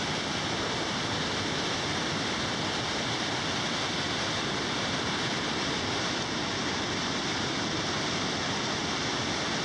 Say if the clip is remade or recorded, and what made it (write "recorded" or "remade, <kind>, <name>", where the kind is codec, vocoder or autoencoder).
recorded